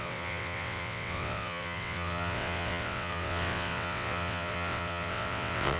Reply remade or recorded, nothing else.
remade